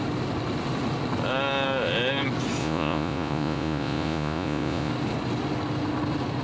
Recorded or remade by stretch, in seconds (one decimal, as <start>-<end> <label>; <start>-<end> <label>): 0.0-2.6 recorded; 2.6-4.9 remade; 4.9-6.4 recorded